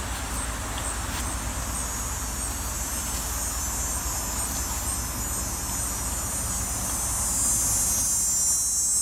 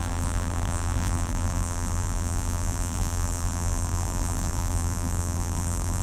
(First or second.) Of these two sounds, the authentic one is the first